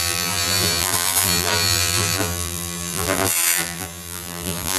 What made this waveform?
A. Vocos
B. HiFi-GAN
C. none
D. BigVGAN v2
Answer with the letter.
D